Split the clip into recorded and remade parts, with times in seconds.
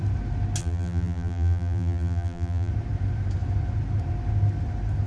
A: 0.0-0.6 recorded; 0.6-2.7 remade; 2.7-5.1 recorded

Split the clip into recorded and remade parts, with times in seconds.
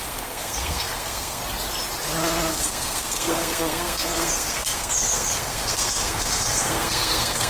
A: 0.0-1.4 remade; 1.4-2.5 recorded; 2.5-7.5 remade